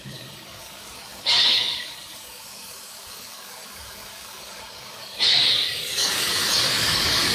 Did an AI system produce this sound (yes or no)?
yes